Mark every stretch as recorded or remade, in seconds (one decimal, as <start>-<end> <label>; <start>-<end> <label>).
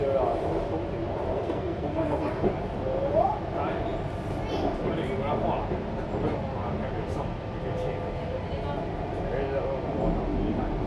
0.0-1.3 recorded; 1.3-2.5 remade; 2.5-10.9 recorded